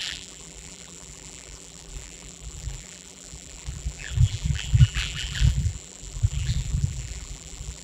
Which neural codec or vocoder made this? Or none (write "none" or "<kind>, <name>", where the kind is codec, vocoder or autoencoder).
vocoder, BigVGAN v2